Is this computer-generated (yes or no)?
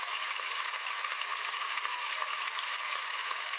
yes